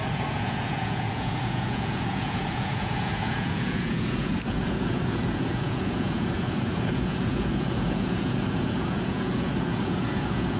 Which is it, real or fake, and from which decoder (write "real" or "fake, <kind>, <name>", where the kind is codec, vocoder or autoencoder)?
fake, vocoder, Vocos